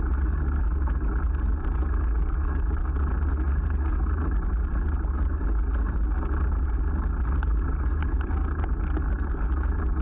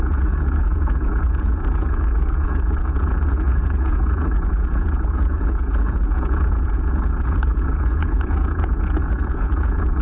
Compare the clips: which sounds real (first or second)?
first